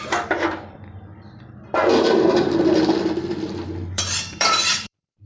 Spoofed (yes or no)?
yes